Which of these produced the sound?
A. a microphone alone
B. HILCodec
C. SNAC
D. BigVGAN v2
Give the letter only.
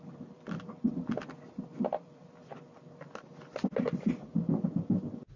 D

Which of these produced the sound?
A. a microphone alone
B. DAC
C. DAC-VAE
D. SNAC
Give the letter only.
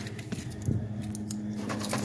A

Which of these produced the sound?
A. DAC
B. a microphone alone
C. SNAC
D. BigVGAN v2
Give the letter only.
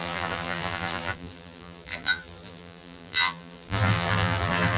D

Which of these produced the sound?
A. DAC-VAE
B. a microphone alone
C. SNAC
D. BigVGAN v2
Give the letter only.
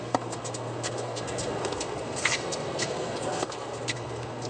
C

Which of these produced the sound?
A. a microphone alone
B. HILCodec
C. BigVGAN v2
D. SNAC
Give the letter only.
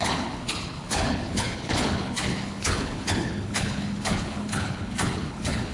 B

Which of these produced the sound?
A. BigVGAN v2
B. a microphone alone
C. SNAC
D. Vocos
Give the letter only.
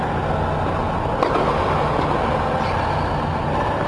B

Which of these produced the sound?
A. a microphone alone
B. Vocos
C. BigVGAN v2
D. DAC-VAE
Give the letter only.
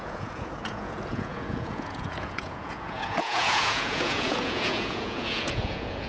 B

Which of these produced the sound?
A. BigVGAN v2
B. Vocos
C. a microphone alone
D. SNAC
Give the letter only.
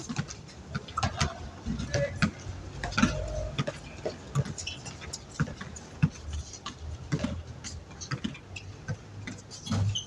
C